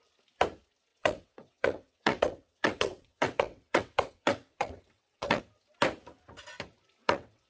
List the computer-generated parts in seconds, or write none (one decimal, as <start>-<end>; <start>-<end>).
0.9-5.4; 7.0-7.5